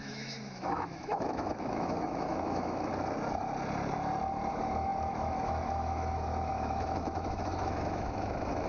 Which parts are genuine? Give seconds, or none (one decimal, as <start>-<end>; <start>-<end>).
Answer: 2.9-4.5